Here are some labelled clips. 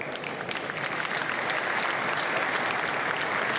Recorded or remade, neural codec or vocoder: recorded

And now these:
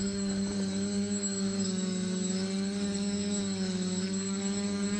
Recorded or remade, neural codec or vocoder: remade, codec, DAC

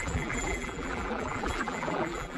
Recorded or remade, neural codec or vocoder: remade, vocoder, BigVGAN v2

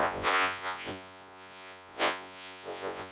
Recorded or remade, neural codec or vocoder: remade, vocoder, Vocos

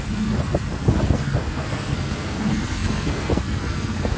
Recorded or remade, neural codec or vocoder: remade, codec, SNAC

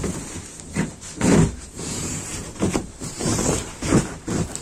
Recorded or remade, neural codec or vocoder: remade, vocoder, BigVGAN v2